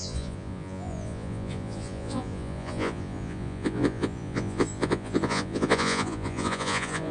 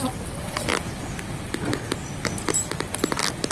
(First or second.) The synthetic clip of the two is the first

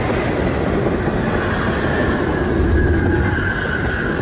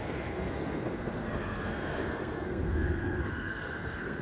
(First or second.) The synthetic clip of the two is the second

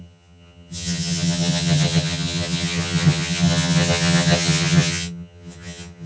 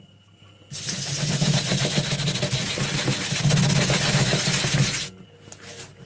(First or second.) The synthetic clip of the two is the first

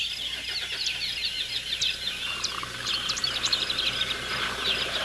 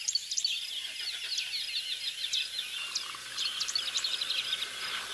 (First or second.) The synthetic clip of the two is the first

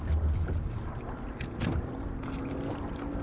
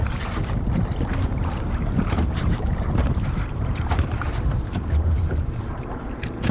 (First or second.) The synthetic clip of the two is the second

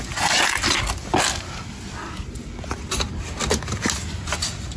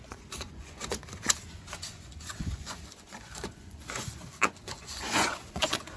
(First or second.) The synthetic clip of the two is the second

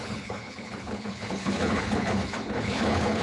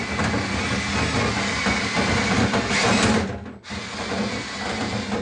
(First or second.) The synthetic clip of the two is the first